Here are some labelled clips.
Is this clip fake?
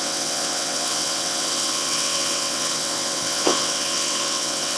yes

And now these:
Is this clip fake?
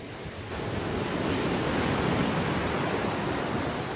no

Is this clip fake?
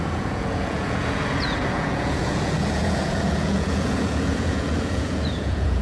yes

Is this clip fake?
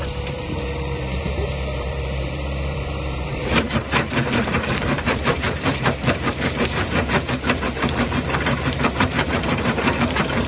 yes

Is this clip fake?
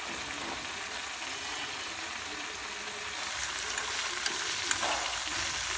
no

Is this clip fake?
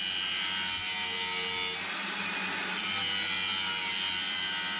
no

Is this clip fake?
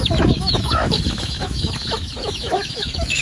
yes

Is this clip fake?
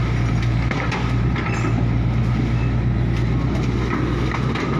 no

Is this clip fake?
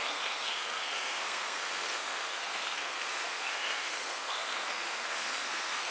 yes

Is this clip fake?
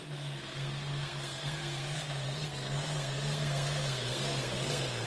yes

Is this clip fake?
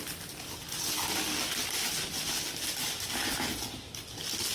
no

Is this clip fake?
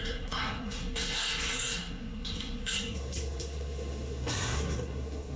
yes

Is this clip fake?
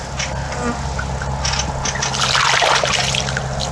no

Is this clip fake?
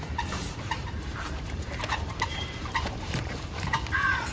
yes